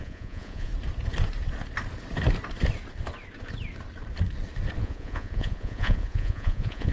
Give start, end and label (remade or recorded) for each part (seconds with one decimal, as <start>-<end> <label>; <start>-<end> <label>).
0.0-0.7 remade; 0.7-4.8 recorded; 4.8-6.9 remade

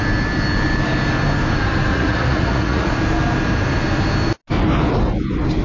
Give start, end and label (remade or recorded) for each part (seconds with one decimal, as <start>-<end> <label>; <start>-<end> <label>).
0.0-1.9 recorded; 1.9-2.9 remade; 2.9-5.6 recorded

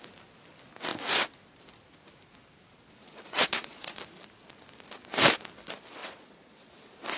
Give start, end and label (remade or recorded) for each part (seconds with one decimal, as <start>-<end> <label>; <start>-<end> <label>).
0.0-3.0 recorded; 3.0-4.0 remade; 4.0-6.0 recorded; 6.0-6.7 remade; 6.7-7.2 recorded

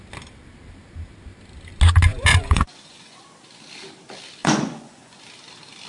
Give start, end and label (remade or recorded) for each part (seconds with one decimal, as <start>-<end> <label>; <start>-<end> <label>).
0.0-2.1 recorded; 2.1-3.2 remade; 3.2-4.4 recorded; 4.4-5.2 remade; 5.2-5.9 recorded

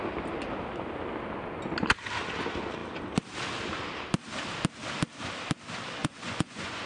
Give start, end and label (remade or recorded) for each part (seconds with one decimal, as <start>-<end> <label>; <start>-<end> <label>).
0.0-6.0 recorded; 6.0-6.9 remade

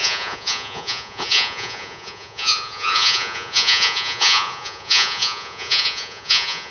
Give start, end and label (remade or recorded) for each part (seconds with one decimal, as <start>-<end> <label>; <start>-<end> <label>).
0.0-6.7 remade